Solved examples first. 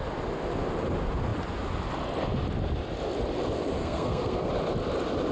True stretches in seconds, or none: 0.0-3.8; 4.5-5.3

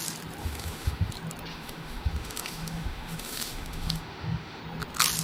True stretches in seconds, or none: 0.0-0.4; 1.1-1.5; 4.6-5.2

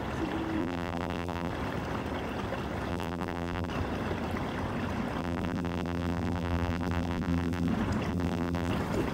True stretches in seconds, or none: 0.0-0.6; 1.5-2.9; 3.7-5.2; 7.7-8.1; 8.7-9.1

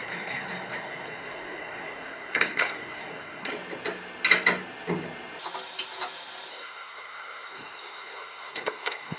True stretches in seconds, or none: 3.5-6.5

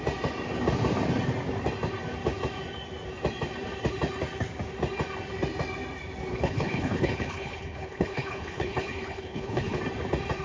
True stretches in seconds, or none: 0.0-6.3; 9.8-10.4

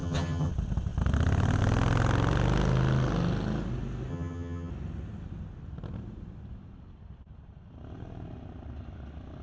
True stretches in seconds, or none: 0.5-4.1; 4.7-9.4